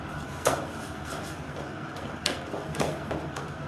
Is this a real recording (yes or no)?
no